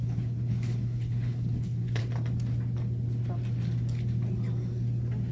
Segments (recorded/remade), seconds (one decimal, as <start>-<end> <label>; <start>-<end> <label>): 0.0-2.0 remade; 2.0-5.3 recorded